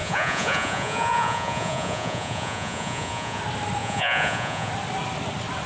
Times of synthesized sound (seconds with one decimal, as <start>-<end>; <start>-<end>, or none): 0.0-3.4; 3.8-4.7